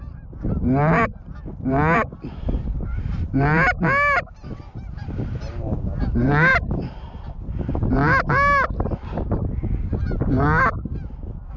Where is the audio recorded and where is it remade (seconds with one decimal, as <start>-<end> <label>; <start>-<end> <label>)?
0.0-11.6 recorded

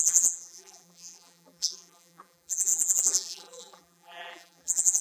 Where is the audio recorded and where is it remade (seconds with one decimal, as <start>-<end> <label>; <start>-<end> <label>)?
0.0-5.0 remade

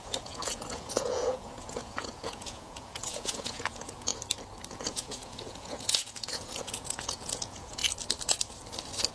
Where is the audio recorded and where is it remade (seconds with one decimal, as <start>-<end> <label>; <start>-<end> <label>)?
0.0-4.1 remade; 4.1-4.7 recorded; 4.7-7.8 remade; 7.8-9.1 recorded

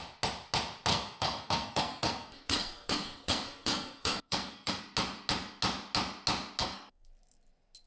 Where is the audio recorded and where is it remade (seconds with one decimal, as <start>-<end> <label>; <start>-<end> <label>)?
0.0-0.9 recorded; 0.9-4.8 remade; 4.8-6.6 recorded; 6.6-7.1 remade; 7.1-7.9 recorded

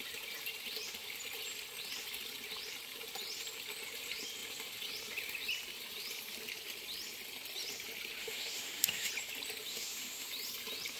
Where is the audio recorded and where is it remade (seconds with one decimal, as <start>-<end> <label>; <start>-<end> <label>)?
0.0-8.2 recorded; 8.2-9.1 remade; 9.1-9.7 recorded; 9.7-10.3 remade; 10.3-11.0 recorded

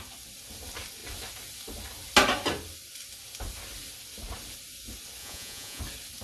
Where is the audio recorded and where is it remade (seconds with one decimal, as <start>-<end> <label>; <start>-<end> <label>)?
0.0-5.2 recorded; 5.2-5.8 remade; 5.8-6.2 recorded

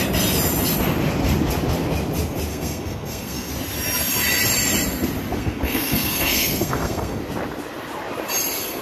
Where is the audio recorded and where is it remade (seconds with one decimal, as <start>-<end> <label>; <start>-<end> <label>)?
0.0-2.5 recorded; 2.5-3.5 remade; 3.5-5.4 recorded; 5.4-7.2 remade; 7.2-8.8 recorded